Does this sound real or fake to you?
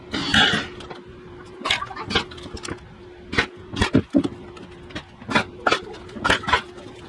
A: real